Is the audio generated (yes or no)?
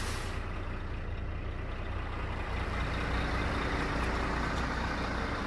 no